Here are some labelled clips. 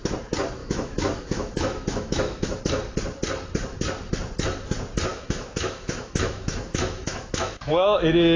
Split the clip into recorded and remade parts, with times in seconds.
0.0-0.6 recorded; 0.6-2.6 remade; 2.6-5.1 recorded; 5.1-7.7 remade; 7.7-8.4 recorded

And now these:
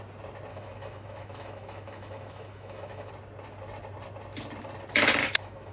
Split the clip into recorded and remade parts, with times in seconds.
0.0-0.5 recorded; 0.5-3.1 remade; 3.1-5.2 recorded; 5.2-5.7 remade

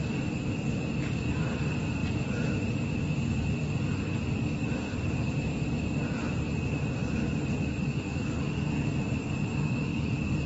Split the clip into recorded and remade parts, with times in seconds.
0.0-7.9 recorded; 7.9-8.7 remade; 8.7-9.6 recorded; 9.6-10.1 remade; 10.1-10.5 recorded

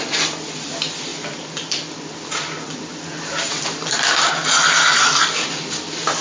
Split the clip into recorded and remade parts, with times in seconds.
0.0-6.2 recorded

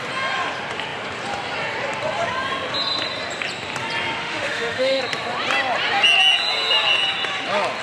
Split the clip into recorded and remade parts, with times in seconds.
0.0-4.2 recorded; 4.2-5.0 remade; 5.0-7.8 recorded